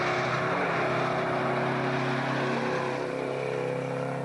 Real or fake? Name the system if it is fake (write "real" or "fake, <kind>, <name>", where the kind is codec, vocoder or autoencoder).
real